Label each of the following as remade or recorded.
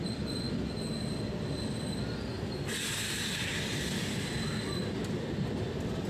recorded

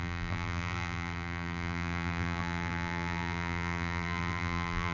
remade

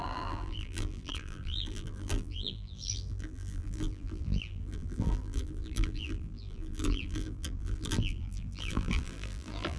remade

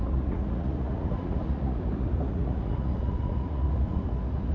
remade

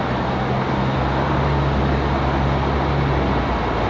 recorded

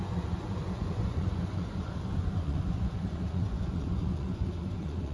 remade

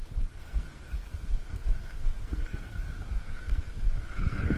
remade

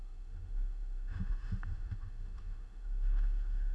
remade